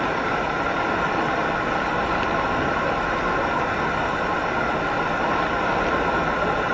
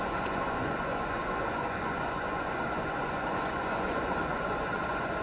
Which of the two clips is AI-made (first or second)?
second